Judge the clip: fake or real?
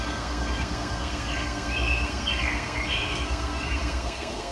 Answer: fake